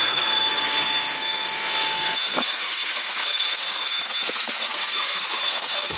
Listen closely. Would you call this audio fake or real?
fake